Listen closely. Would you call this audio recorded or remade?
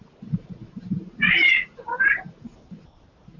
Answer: remade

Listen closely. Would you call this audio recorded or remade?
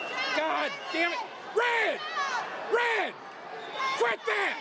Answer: recorded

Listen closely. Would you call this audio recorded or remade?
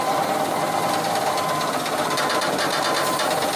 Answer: recorded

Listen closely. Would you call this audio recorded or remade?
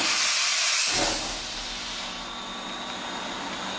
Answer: recorded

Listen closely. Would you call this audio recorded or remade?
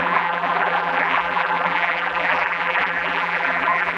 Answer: remade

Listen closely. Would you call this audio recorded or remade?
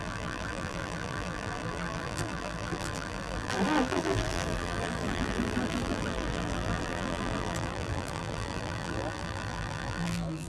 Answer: remade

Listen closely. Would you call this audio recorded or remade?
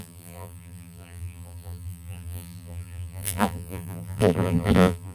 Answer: remade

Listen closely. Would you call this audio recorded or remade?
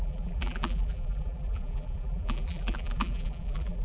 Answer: remade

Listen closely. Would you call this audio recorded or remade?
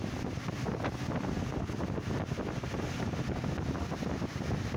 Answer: recorded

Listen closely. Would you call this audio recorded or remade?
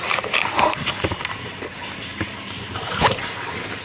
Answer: remade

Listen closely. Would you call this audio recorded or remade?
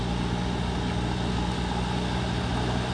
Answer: recorded